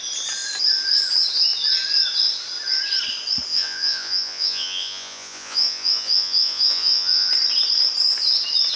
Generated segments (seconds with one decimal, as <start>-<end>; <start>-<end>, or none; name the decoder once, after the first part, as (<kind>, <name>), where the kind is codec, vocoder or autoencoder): 3.5-7.3 (vocoder, Vocos)